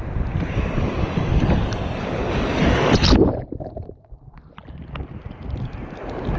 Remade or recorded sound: recorded